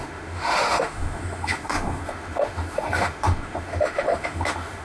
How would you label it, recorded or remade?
remade